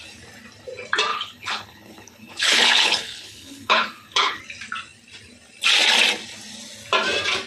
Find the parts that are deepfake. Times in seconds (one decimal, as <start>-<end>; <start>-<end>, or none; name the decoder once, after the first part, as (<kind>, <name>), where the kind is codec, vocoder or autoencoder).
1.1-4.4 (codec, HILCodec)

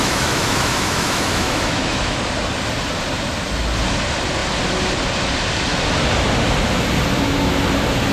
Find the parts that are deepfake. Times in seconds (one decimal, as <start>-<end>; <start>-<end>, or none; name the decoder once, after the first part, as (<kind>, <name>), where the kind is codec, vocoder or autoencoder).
0.0-2.2 (autoencoder, DAC-VAE)

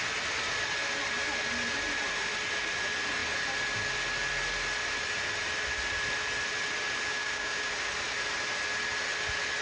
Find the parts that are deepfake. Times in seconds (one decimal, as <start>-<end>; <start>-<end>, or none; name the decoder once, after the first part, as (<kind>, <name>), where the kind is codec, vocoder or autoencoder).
7.1-7.7 (codec, DAC)

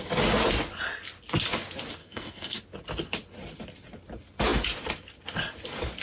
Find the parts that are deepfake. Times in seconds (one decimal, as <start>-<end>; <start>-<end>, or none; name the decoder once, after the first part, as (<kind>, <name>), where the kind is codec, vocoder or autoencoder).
2.0-2.6 (codec, SNAC)